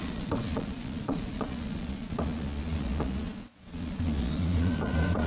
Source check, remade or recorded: remade